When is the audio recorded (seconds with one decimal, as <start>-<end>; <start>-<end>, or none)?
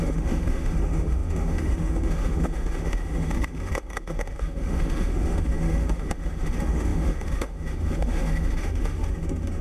none